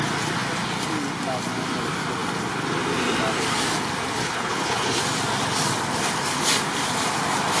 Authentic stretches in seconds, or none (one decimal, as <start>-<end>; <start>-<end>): 0.0-4.2; 5.0-7.6